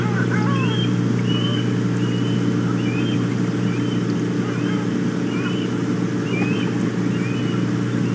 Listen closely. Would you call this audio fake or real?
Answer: real